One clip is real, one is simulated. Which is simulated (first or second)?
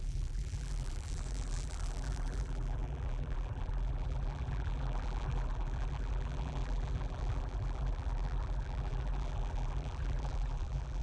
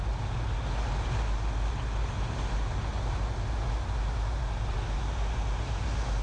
first